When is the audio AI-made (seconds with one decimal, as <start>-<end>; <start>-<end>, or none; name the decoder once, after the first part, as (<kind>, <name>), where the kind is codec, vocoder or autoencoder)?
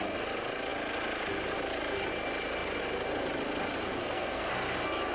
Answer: 3.9-4.5 (codec, SNAC)